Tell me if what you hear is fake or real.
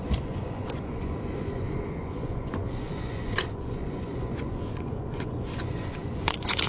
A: fake